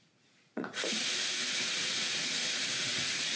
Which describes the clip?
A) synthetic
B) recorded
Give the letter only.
A